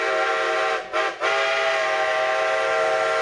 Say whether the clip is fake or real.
real